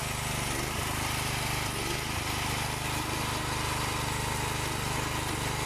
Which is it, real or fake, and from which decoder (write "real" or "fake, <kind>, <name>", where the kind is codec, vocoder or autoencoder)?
real